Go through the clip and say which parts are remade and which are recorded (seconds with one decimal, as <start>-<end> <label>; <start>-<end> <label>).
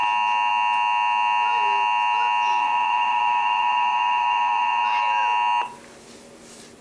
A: 0.0-2.5 recorded; 2.5-4.8 remade; 4.8-6.8 recorded